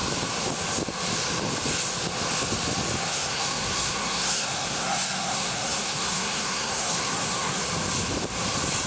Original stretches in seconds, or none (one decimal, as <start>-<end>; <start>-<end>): 0.0-3.1; 7.6-8.9